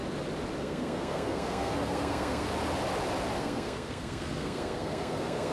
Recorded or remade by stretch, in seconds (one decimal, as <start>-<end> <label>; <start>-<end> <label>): 0.0-0.6 recorded; 0.6-2.5 remade; 2.5-3.4 recorded; 3.4-5.5 remade